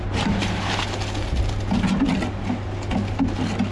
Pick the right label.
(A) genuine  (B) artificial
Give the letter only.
A